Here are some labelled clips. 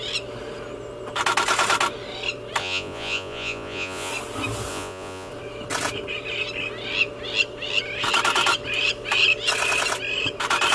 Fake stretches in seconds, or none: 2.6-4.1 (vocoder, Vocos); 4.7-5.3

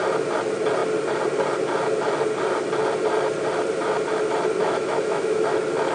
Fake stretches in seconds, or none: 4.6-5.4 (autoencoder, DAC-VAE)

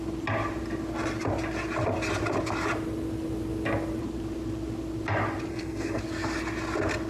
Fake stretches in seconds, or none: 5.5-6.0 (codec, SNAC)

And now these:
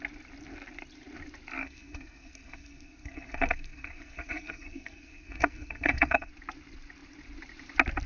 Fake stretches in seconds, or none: 1.6-6.3 (codec, SNAC)

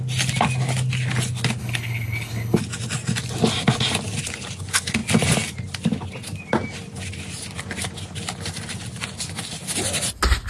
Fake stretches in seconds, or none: 1.6-2.6 (codec, HILCodec)

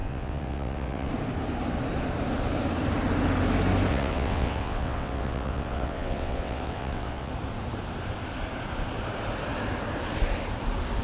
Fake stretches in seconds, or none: 0.0-1.1 (vocoder, WaveNeXt); 3.9-7.3

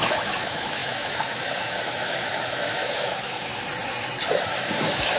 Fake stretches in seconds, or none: 0.0-3.5 (autoencoder, DAC-VAE); 4.4-5.2